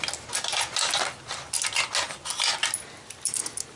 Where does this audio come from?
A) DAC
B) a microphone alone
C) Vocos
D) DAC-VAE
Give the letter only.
B